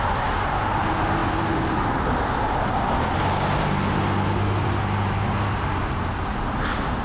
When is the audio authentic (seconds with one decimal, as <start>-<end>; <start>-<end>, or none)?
0.0-7.0